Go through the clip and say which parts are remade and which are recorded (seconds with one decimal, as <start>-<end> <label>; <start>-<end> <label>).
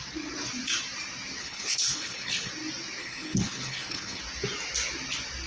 0.0-1.4 recorded; 1.4-2.5 remade; 2.5-3.0 recorded; 3.0-4.2 remade; 4.2-5.5 recorded